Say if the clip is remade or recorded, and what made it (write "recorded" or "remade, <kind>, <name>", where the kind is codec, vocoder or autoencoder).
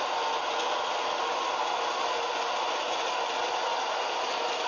recorded